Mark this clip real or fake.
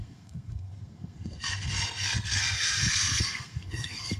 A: fake